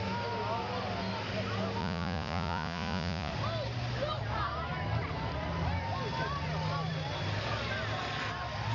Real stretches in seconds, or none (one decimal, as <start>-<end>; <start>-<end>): 0.0-1.8; 3.3-8.7